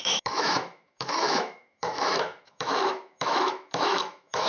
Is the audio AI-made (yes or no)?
yes